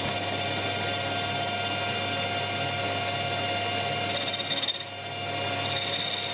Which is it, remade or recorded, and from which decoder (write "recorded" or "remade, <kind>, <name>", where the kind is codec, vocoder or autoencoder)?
recorded